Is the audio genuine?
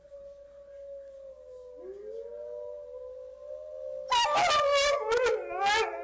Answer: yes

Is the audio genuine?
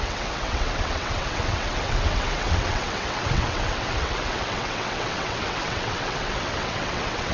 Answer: no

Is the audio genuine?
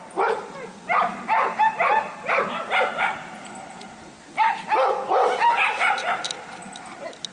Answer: yes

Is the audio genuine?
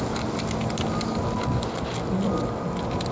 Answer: yes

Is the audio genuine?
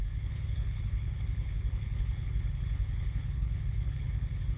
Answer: no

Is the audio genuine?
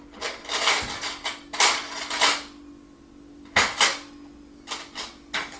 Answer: yes